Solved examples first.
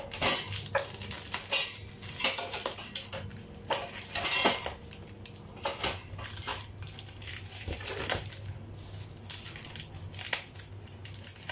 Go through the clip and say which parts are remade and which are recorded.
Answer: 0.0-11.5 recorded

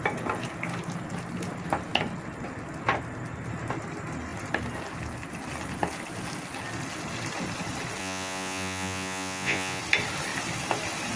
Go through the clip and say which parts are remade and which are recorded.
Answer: 0.0-8.0 recorded; 8.0-9.8 remade; 9.8-11.2 recorded

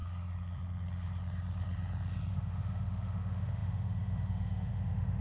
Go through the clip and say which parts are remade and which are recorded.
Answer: 0.0-2.3 recorded; 2.3-5.2 remade

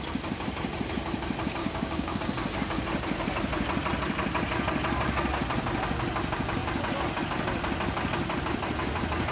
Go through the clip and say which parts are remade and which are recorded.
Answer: 0.0-1.6 recorded; 1.6-2.2 remade; 2.2-9.3 recorded